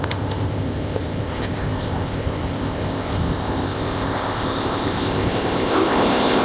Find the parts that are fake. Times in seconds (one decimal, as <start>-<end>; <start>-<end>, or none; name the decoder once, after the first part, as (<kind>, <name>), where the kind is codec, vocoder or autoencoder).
0.0-6.4 (codec, ZipCodec)